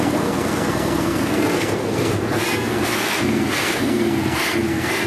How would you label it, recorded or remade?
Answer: remade